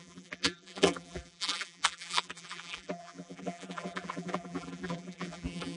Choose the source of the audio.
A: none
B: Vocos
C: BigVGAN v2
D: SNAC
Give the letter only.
C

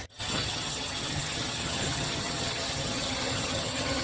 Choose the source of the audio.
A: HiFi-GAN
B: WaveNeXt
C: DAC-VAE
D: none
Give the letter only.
A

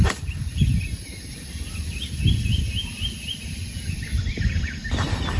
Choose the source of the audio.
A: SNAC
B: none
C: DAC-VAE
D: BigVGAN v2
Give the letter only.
D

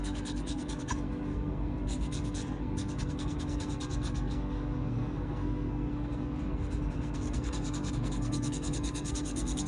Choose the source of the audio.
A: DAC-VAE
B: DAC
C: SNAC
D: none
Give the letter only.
C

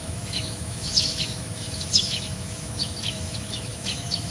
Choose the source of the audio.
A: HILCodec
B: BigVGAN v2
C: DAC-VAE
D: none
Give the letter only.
C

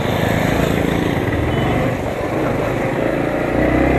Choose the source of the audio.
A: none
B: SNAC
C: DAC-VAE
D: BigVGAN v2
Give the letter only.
A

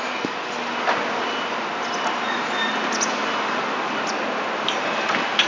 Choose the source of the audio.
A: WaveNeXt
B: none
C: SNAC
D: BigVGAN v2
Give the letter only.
B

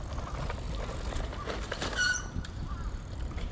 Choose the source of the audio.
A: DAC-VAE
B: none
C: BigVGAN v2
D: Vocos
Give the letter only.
C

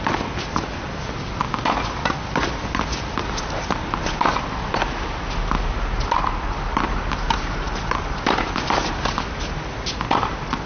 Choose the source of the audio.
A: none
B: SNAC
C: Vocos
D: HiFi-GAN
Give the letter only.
A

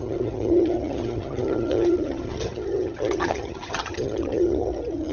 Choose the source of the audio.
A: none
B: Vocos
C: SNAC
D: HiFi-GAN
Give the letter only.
D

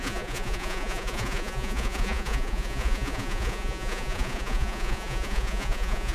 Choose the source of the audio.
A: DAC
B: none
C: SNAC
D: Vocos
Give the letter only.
D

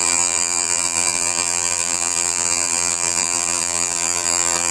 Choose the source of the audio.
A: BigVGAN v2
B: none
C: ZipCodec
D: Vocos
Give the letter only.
A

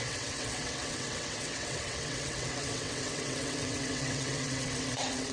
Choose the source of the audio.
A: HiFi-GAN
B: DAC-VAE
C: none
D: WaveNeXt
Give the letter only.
D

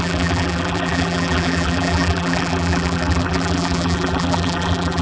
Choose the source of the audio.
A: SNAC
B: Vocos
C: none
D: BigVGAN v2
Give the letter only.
D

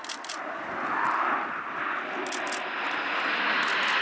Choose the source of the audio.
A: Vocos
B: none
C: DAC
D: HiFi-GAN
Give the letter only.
B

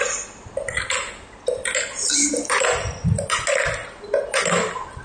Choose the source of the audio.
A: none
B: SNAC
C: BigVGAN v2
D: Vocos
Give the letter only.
A